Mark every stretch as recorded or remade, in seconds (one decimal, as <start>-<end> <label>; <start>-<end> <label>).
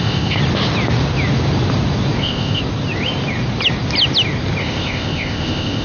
0.0-0.4 remade; 0.4-2.2 recorded; 2.2-2.6 remade; 2.6-4.6 recorded; 4.6-5.8 remade